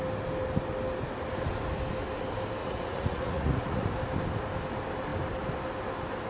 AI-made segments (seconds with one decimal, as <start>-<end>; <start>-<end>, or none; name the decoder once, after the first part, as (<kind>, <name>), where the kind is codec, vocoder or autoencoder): 2.6-3.9 (vocoder, Vocos)